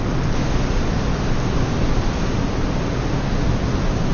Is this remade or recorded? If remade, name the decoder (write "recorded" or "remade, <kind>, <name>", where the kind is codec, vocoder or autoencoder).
recorded